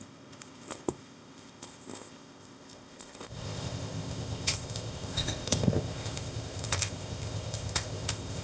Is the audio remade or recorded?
remade